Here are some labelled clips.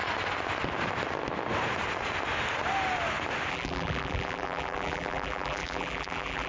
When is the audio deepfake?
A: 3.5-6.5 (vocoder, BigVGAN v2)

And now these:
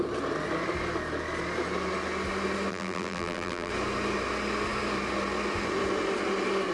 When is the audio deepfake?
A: 2.7-3.7 (vocoder, BigVGAN v2)